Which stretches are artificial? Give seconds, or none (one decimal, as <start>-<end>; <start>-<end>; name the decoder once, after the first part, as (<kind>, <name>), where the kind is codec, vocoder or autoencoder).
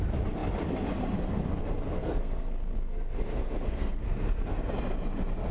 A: 2.0-4.7 (codec, SNAC)